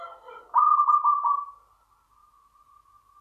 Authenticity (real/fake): real